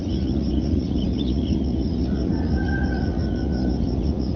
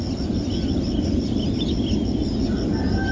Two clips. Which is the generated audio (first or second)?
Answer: first